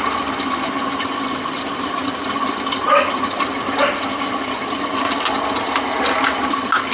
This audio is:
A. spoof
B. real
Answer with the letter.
B